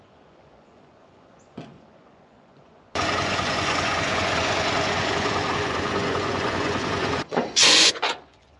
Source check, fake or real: fake